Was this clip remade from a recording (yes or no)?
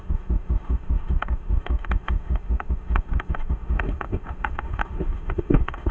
yes